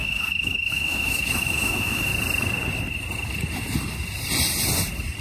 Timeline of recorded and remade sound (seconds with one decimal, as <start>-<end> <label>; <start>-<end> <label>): 0.0-2.1 remade; 2.1-5.2 recorded